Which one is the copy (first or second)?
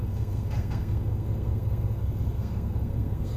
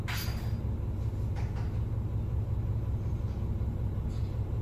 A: first